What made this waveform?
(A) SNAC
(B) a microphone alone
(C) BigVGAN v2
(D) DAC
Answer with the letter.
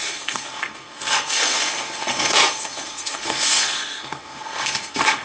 A